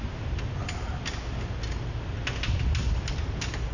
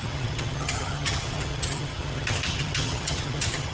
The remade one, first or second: second